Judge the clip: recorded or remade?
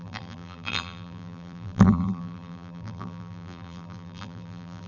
remade